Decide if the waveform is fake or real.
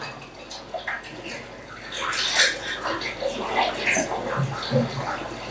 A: real